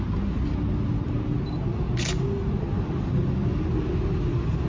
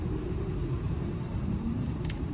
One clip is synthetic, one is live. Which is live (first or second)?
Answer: first